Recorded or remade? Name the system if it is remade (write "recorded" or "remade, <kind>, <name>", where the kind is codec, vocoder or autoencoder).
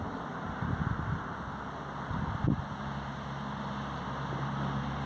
recorded